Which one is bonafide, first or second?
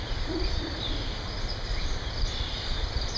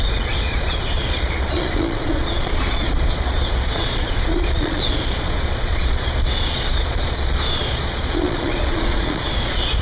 first